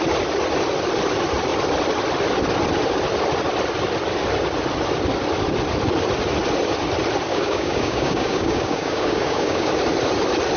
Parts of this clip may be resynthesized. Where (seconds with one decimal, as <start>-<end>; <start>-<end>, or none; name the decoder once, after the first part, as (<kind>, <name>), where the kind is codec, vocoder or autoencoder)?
7.3-9.7 (codec, DAC)